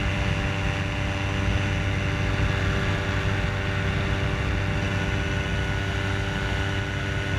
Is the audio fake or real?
real